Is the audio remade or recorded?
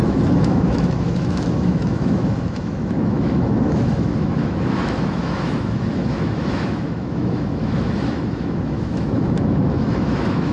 remade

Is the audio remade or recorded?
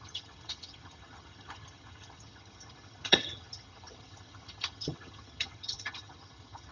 remade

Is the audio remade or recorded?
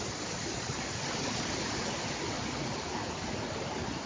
recorded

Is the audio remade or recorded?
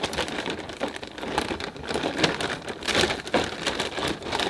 recorded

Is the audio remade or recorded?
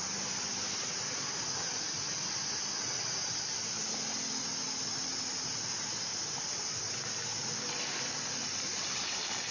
recorded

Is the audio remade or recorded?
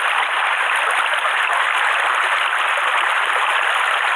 recorded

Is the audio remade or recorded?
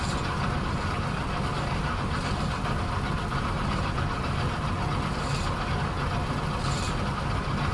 recorded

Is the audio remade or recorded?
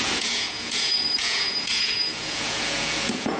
remade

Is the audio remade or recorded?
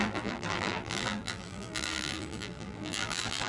remade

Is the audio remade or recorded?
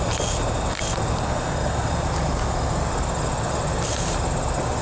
recorded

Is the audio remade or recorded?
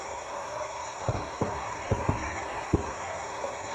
remade